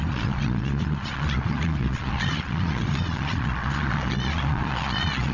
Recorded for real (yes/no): no